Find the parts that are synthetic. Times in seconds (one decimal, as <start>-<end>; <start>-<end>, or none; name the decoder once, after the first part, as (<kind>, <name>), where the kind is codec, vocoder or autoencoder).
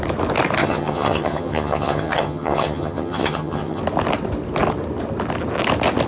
0.6-3.8 (vocoder, HiFi-GAN)